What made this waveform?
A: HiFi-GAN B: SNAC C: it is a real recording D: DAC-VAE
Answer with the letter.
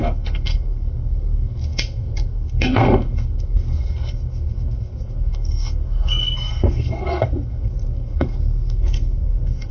B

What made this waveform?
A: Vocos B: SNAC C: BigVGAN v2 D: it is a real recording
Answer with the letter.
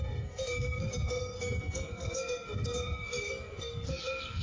B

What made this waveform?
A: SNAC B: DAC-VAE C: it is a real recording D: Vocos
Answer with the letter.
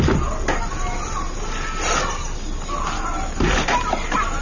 C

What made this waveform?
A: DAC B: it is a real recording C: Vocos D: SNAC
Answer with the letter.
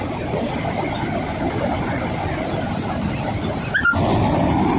B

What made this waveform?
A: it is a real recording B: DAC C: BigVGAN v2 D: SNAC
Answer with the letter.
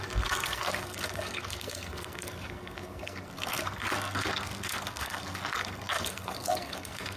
D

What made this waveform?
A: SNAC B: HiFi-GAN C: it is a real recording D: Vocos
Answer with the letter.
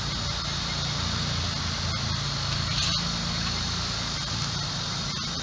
C